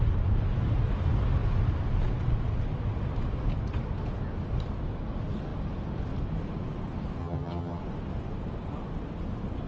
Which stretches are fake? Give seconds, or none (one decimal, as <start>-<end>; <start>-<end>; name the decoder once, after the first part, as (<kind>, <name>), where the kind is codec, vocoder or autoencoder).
7.2-7.8 (vocoder, HiFi-GAN)